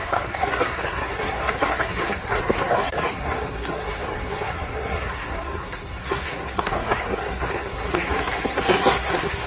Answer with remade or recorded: remade